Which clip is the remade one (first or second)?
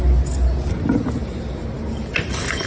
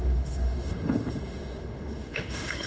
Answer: second